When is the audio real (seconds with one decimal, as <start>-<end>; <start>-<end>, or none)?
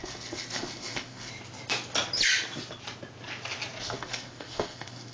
1.3-3.8